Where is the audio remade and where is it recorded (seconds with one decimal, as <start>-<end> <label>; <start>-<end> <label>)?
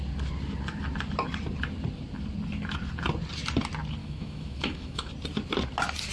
0.0-4.0 recorded; 4.0-5.1 remade; 5.1-6.1 recorded